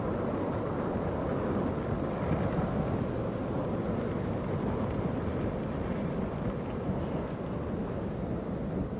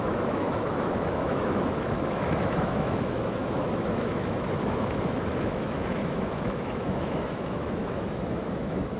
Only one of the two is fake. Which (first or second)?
second